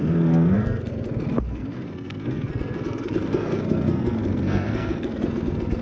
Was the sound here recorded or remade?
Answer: remade